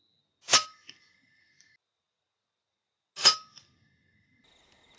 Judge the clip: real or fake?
real